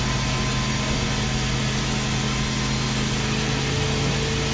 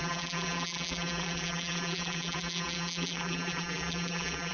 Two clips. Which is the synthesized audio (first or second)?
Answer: second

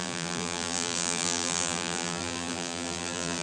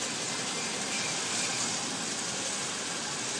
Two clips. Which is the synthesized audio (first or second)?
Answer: first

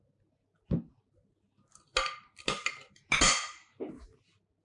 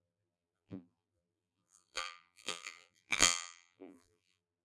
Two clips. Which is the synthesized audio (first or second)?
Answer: second